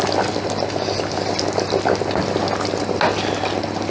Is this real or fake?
real